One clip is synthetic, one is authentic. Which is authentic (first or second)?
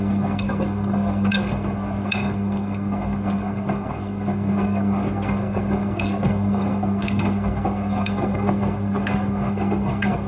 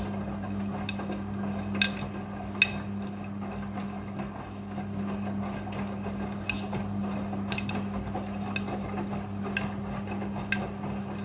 second